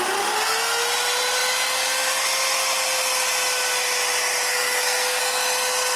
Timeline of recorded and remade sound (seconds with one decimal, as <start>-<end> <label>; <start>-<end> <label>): 0.0-4.5 recorded; 4.5-5.2 remade; 5.2-6.0 recorded

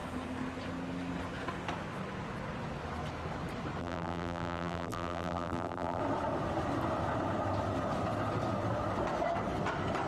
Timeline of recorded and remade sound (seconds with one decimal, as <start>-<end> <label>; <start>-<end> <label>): 0.0-3.8 recorded; 3.8-6.0 remade; 6.0-10.1 recorded

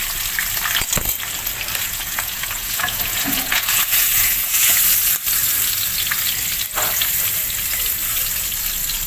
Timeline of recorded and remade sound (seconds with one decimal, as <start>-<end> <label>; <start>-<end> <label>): 0.0-1.8 recorded; 1.8-4.8 remade; 4.8-9.1 recorded

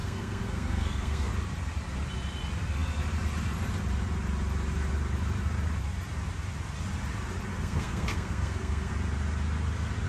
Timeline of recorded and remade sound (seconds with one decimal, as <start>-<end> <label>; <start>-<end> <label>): 0.0-1.3 remade; 1.3-7.5 recorded; 7.5-8.9 remade; 8.9-10.1 recorded

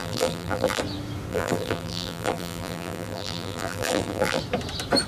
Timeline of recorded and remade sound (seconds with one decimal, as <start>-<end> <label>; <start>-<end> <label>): 0.0-0.8 remade; 0.8-1.3 recorded; 1.3-4.4 remade; 4.4-5.1 recorded